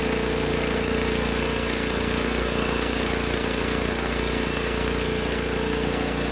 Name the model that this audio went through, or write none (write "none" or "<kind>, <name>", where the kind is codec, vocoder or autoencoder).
codec, SNAC